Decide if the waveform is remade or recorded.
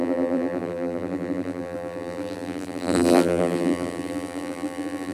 remade